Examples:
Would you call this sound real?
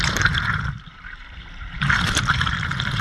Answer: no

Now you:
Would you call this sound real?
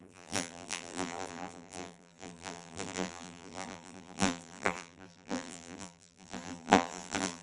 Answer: no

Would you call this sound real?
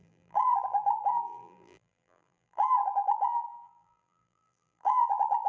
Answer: no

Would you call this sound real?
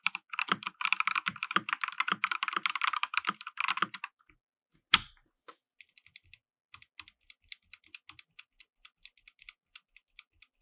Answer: yes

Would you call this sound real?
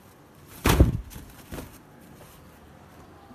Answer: yes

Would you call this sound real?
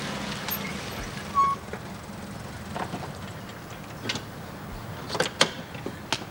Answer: yes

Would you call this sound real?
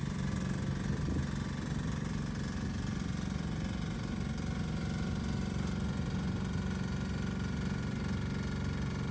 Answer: yes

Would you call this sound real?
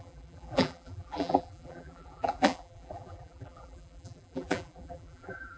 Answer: no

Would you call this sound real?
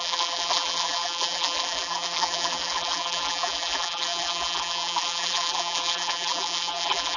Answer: no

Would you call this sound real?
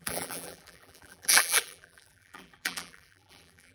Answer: no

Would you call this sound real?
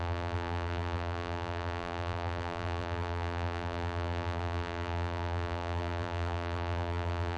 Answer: no